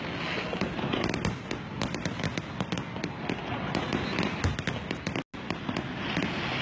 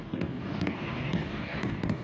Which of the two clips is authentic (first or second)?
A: first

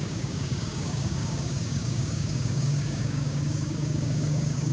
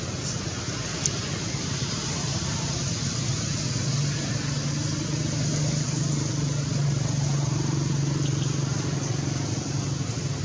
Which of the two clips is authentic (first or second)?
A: second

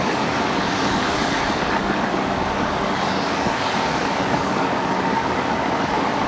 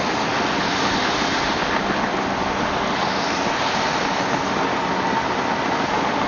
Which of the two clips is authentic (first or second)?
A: second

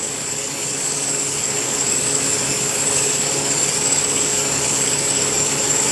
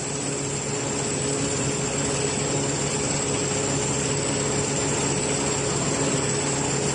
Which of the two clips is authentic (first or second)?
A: second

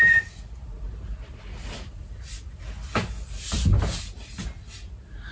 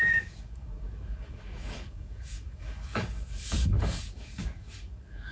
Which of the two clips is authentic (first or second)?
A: first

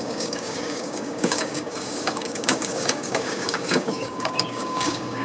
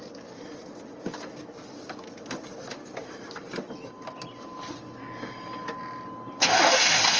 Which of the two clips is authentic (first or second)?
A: second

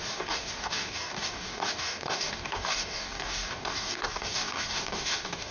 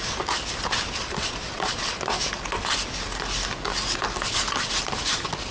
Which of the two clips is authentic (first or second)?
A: second